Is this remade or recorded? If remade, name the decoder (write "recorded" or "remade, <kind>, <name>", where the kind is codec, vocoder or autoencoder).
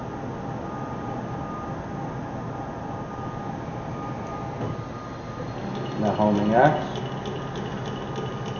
recorded